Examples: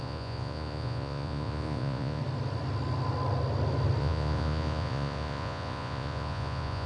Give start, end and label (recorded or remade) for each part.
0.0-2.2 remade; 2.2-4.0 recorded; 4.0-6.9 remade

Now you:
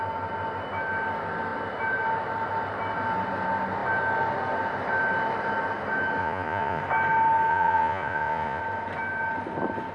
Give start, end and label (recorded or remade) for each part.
0.0-6.2 recorded; 6.2-6.8 remade; 6.8-7.5 recorded; 7.5-8.6 remade; 8.6-9.9 recorded

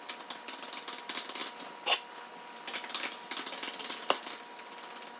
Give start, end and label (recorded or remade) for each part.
0.0-5.2 recorded

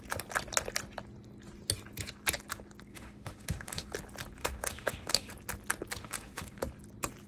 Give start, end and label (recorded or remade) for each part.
0.0-2.9 recorded; 2.9-3.9 remade; 3.9-4.4 recorded; 4.4-5.3 remade; 5.3-6.0 recorded; 6.0-6.6 remade; 6.6-7.3 recorded

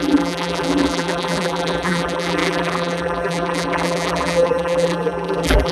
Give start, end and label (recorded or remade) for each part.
0.0-5.7 remade

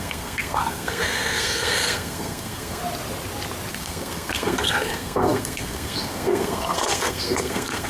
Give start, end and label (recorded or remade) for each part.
0.0-2.8 remade; 2.8-3.7 recorded; 3.7-7.9 remade

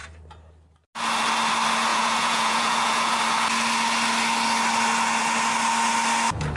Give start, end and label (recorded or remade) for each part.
0.0-1.9 recorded; 1.9-3.2 remade; 3.2-6.6 recorded